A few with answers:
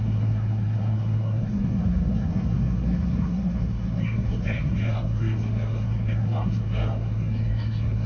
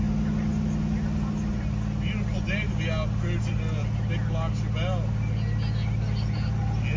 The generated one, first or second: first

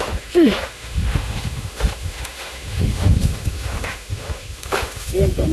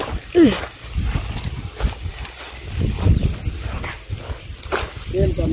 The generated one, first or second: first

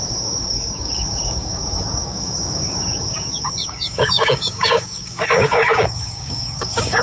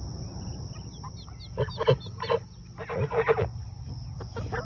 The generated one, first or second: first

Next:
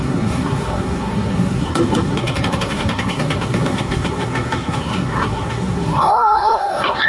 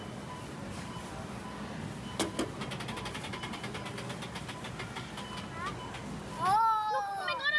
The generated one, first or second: first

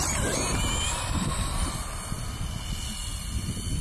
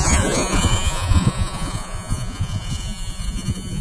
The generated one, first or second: second